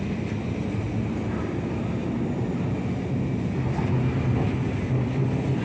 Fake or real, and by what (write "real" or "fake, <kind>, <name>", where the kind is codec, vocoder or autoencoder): real